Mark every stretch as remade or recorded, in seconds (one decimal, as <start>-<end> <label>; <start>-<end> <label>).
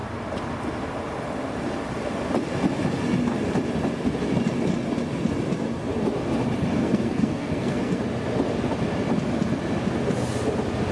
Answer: 0.0-6.8 recorded; 6.8-8.0 remade; 8.0-10.9 recorded